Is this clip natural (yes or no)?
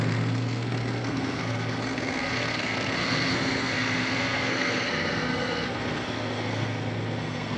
no